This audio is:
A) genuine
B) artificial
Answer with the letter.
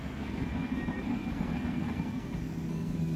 B